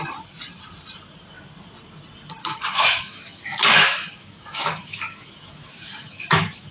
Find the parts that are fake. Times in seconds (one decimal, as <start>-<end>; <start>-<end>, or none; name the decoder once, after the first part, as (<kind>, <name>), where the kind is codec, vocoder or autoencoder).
2.4-6.7 (autoencoder, DAC-VAE)